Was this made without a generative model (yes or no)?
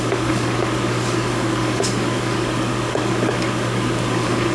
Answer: no